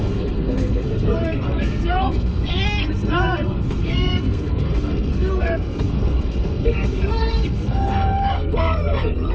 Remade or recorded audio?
remade